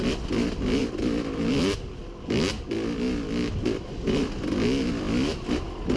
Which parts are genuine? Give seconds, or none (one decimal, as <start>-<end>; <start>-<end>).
0.0-6.0

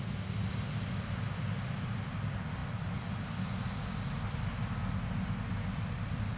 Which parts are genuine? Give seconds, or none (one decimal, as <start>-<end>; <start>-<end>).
0.0-6.4

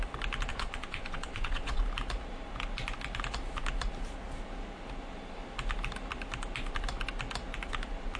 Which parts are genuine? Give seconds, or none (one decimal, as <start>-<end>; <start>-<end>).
0.0-0.5; 1.8-8.2